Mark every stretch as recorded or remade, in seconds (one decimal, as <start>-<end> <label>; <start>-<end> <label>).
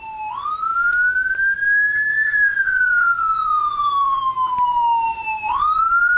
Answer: 0.0-2.1 recorded; 2.1-4.2 remade; 4.2-6.2 recorded